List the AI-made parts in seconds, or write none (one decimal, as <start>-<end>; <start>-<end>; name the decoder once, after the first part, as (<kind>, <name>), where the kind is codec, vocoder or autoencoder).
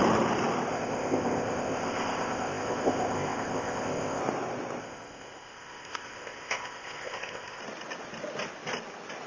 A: 0.7-4.2 (codec, ZipCodec); 4.8-7.6